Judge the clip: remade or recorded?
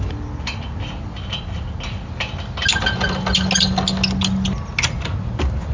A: recorded